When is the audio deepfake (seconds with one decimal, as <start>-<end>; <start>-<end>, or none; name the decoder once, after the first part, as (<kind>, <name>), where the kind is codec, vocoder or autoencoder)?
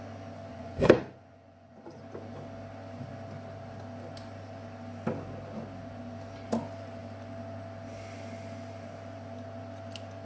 0.5-2.0 (vocoder, Vocos)